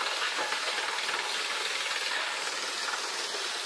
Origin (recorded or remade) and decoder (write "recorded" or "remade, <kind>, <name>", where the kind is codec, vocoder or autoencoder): recorded